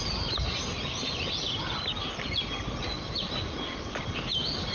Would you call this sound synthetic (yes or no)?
no